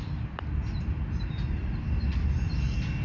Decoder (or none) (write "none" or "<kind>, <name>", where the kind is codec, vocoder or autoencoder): none